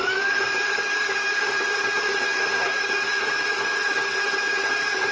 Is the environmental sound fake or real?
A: fake